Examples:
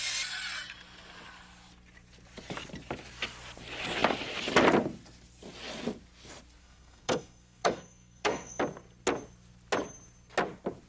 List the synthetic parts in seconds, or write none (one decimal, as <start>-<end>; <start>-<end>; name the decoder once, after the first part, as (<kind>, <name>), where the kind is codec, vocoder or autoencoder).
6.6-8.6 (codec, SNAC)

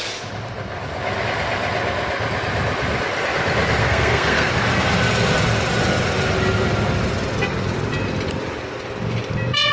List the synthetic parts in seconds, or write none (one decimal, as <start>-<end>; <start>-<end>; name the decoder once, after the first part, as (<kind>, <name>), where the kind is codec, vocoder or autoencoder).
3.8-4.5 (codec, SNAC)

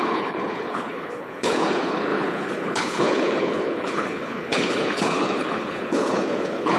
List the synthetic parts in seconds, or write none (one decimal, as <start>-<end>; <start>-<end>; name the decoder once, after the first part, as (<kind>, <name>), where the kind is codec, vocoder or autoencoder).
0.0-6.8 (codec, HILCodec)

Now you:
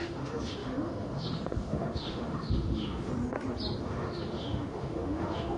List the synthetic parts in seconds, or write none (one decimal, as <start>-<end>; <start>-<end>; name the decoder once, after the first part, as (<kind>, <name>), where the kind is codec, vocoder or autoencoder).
0.0-3.1 (autoencoder, DAC-VAE); 3.8-5.6

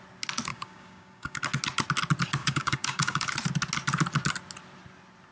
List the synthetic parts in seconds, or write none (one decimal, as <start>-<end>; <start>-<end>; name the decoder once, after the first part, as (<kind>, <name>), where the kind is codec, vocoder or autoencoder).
0.5-1.4 (codec, DAC); 2.4-3.3

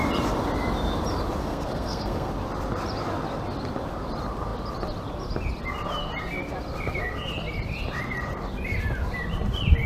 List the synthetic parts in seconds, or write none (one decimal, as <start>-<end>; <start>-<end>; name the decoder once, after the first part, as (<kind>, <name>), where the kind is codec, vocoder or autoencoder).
1.4-2.3 (codec, SNAC)

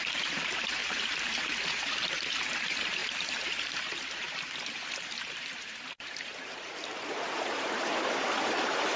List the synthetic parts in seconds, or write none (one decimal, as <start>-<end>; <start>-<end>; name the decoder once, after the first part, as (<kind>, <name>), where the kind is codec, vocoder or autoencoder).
0.0-9.0 (vocoder, BigVGAN v2)

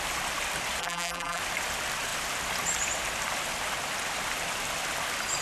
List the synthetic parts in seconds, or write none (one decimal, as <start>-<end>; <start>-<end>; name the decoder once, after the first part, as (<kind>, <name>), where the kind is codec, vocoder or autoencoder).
0.8-1.4 (vocoder, BigVGAN v2)